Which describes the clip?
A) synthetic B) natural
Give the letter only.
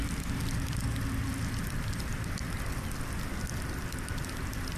B